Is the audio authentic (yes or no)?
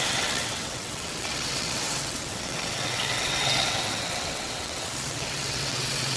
no